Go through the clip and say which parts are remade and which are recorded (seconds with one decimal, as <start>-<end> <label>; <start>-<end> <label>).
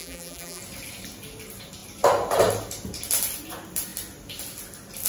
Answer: 0.0-0.6 remade; 0.6-5.1 recorded